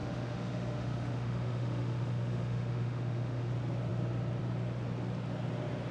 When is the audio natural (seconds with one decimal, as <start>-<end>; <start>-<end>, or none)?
3.5-5.9